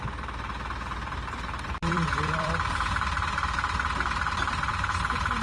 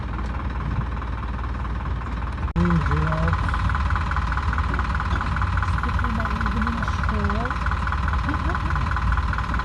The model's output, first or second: first